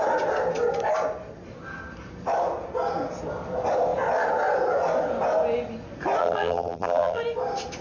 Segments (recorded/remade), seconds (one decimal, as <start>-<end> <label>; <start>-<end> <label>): 0.0-6.2 recorded; 6.2-7.2 remade; 7.2-7.8 recorded